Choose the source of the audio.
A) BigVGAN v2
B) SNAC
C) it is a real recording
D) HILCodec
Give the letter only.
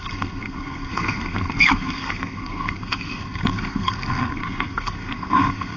B